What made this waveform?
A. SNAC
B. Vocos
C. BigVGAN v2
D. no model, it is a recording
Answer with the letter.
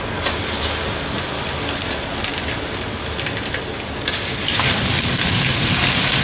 C